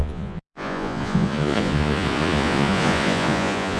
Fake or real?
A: fake